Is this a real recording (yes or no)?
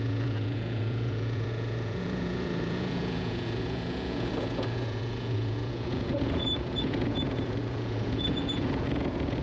no